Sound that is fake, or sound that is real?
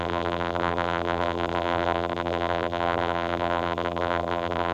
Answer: fake